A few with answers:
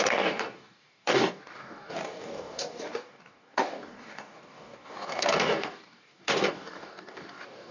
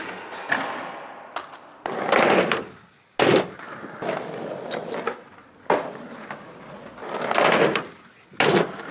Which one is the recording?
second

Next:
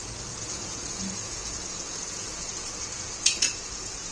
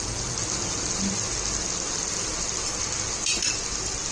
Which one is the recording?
second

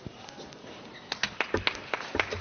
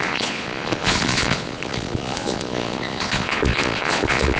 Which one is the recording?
first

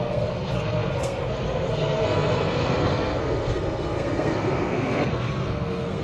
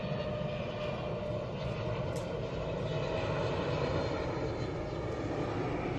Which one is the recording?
second